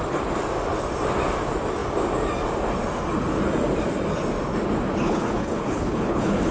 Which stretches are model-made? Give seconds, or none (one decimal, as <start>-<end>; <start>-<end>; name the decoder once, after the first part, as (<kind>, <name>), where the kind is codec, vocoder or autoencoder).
5.0-6.5 (codec, HILCodec)

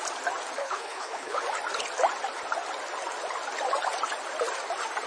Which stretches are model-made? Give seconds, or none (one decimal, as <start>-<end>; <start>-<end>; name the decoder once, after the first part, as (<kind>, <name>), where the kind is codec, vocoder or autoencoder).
0.6-1.4 (codec, HILCodec)

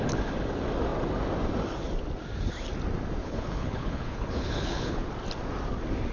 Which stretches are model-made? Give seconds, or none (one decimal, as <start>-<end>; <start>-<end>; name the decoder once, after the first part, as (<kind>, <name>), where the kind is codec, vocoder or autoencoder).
3.2-5.1 (codec, HILCodec)

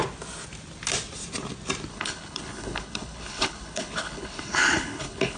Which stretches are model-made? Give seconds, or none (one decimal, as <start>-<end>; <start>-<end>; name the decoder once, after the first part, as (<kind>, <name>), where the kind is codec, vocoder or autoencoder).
1.9-5.4 (codec, HILCodec)

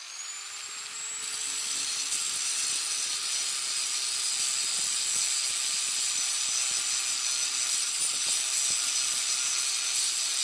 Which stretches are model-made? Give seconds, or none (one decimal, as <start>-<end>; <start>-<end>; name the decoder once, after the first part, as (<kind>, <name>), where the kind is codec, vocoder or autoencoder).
none

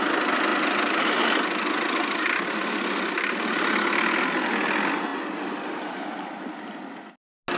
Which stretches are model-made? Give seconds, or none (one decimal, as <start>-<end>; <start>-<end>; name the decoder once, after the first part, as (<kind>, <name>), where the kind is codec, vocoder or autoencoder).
none

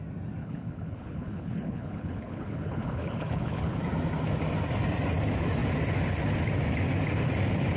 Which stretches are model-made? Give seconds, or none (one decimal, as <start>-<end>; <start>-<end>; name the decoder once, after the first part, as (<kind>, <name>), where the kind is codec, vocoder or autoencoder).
0.4-3.8 (codec, HILCodec)